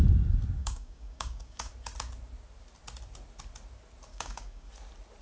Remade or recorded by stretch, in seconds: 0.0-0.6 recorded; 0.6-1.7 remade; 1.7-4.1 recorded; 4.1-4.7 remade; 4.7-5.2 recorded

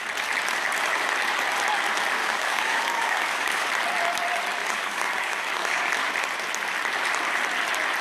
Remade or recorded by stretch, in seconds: 0.0-2.2 recorded; 2.2-3.7 remade; 3.7-4.6 recorded; 4.6-5.9 remade; 5.9-8.0 recorded